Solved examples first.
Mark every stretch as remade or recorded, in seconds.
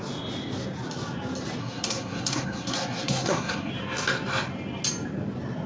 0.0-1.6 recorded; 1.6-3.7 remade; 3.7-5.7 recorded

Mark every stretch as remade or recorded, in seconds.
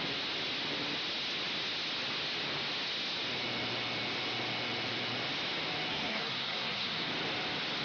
0.0-5.9 recorded; 5.9-7.1 remade; 7.1-7.8 recorded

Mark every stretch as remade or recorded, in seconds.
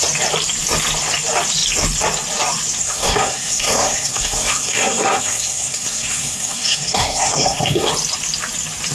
0.0-2.8 recorded; 2.8-7.9 remade; 7.9-8.9 recorded